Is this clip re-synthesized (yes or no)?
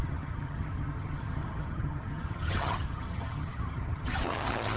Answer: yes